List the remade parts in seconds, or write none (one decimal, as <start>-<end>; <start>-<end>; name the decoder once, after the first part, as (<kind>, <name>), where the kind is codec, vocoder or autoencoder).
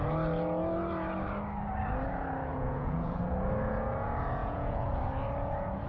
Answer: 2.5-3.2 (vocoder, Vocos); 4.4-4.9